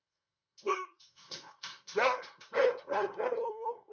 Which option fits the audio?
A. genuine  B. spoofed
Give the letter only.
B